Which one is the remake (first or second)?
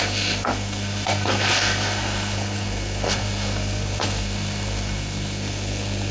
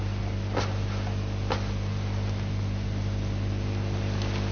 first